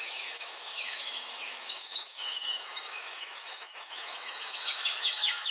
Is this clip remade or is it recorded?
remade